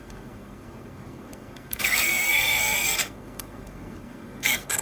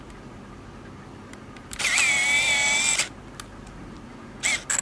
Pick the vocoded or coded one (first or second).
first